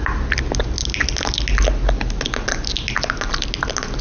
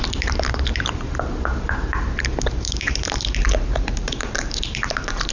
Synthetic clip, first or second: second